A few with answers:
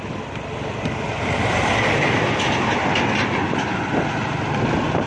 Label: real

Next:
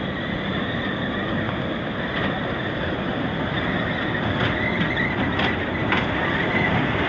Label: real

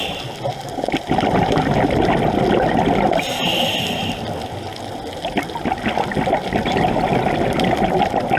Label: real